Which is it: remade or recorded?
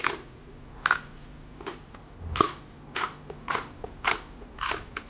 recorded